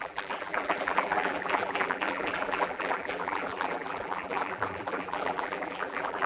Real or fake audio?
fake